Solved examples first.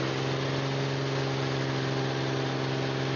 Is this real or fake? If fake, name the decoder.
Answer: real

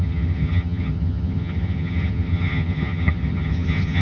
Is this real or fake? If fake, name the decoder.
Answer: fake, vocoder, HiFi-GAN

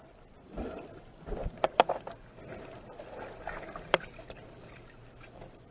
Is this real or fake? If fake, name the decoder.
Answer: real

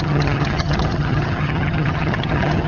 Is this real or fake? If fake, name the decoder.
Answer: fake, vocoder, HiFi-GAN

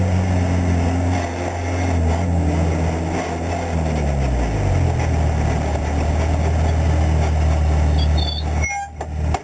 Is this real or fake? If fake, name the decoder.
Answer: real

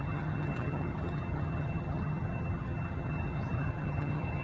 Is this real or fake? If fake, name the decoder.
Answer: fake, vocoder, HiFi-GAN